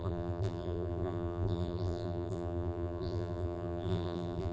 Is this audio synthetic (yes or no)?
yes